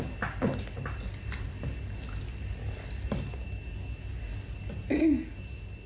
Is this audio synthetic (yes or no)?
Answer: no